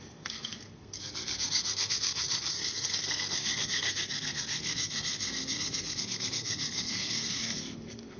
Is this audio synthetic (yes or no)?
yes